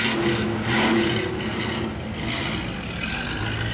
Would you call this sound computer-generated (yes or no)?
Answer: no